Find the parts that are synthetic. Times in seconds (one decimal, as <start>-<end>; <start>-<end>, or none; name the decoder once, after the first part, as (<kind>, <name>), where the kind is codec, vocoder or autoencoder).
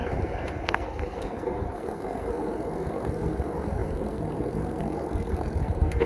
0.0-6.1 (codec, SNAC)